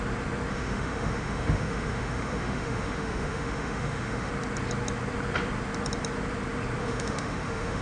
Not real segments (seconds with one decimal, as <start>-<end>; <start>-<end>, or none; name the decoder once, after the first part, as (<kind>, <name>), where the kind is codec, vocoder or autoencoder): 0.5-4.3 (autoencoder, DAC-VAE); 6.8-7.8